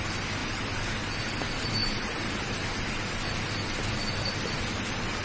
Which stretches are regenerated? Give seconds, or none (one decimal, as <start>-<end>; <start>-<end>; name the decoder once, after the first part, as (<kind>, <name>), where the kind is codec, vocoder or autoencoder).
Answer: 0.4-0.9 (vocoder, BigVGAN v2); 1.8-5.2

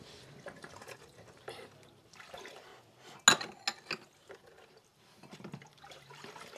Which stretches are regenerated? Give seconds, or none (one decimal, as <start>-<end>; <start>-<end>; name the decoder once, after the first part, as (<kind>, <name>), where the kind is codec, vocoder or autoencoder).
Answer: 0.0-2.7 (vocoder, BigVGAN v2); 4.3-6.6

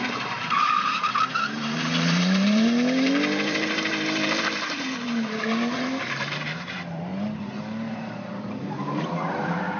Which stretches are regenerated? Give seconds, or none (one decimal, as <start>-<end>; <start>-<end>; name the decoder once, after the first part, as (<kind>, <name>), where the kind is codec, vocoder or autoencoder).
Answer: 0.0-7.1 (vocoder, BigVGAN v2); 7.9-9.8

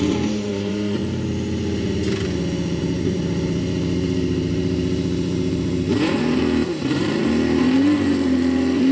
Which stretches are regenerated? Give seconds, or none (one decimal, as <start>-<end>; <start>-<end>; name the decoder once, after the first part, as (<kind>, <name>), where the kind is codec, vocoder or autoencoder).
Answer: 0.0-1.0 (vocoder, BigVGAN v2); 2.8-8.9

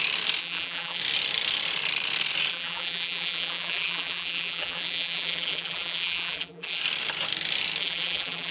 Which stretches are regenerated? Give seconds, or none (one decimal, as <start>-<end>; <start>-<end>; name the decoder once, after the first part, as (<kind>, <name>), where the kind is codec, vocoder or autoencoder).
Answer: 0.4-1.0 (vocoder, BigVGAN v2); 2.5-6.8; 7.8-8.5

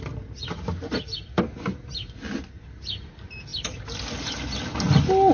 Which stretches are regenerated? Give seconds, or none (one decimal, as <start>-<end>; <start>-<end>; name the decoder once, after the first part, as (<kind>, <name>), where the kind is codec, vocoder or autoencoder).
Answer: 0.4-1.2 (vocoder, BigVGAN v2)

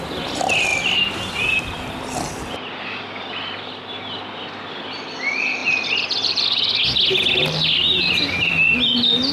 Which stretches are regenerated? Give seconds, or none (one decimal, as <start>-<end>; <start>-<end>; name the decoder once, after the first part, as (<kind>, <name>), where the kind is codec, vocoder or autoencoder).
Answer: 0.7-1.6 (vocoder, BigVGAN v2); 5.6-6.8; 7.4-8.0

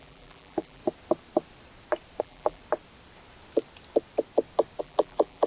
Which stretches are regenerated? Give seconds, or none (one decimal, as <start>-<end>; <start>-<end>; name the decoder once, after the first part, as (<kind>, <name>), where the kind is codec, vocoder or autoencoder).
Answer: 0.0-0.8 (vocoder, BigVGAN v2); 2.2-2.6; 4.8-5.5